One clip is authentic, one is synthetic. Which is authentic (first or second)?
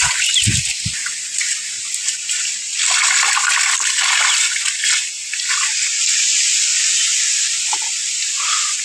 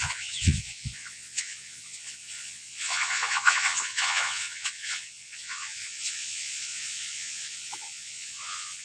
first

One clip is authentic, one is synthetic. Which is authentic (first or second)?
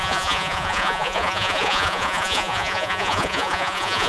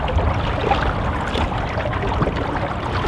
second